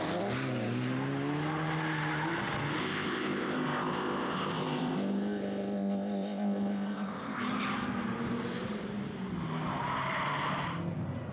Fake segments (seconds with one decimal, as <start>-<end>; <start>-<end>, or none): 2.8-7.4